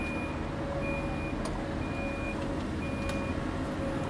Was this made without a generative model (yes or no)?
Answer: yes